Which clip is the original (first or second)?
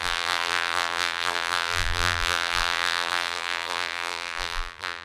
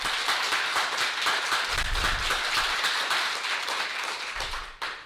second